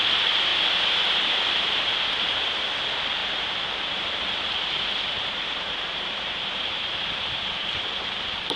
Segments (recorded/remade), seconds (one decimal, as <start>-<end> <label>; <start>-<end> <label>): 0.0-0.5 recorded; 0.5-2.6 remade; 2.6-3.2 recorded; 3.2-8.6 remade